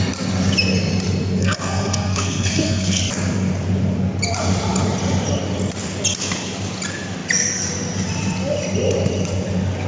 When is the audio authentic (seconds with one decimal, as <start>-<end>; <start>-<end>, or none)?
0.0-1.4; 3.0-9.9